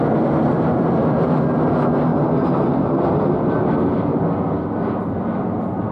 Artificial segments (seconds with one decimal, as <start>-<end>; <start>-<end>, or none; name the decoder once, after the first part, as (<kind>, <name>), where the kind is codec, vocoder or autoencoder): none